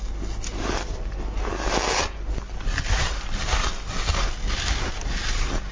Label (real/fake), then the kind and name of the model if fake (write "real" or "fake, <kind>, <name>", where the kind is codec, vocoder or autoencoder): real